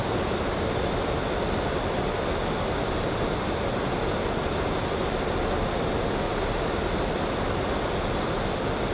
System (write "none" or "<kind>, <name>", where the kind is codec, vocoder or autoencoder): none